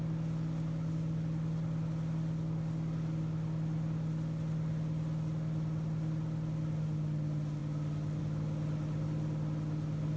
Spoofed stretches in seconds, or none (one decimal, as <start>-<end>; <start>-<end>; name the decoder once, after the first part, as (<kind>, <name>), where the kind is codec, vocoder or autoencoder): none